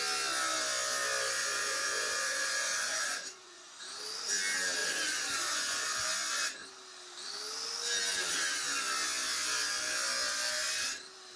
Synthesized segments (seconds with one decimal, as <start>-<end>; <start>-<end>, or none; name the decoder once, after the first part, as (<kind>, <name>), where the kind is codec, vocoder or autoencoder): 1.4-4.0 (vocoder, Vocos); 4.8-6.0